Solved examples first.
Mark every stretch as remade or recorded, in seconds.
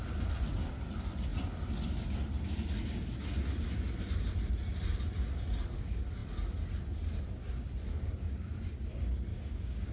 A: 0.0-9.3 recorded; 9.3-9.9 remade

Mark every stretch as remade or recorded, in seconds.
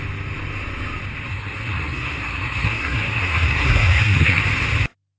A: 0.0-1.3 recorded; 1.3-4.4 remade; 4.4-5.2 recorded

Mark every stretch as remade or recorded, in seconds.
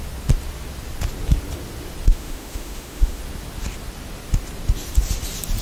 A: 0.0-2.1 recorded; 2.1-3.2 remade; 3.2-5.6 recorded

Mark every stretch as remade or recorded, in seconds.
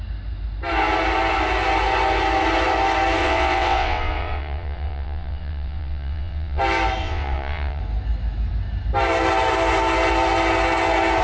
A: 0.0-3.2 recorded; 3.2-6.6 remade; 6.6-7.0 recorded; 7.0-7.8 remade; 7.8-11.2 recorded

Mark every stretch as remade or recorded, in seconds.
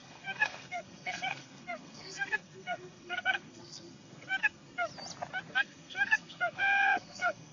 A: 0.0-4.9 remade; 4.9-5.5 recorded; 5.5-7.5 remade